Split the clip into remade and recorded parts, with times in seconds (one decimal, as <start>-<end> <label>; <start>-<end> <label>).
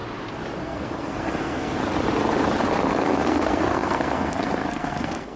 0.0-0.6 recorded; 0.6-1.8 remade; 1.8-2.9 recorded; 2.9-5.4 remade